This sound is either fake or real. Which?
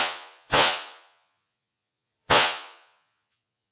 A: fake